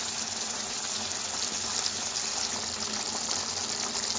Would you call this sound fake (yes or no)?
no